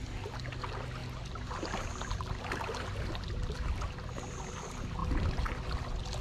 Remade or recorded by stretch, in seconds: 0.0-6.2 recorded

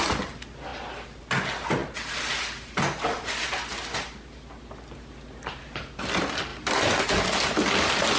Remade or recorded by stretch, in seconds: 0.0-8.2 recorded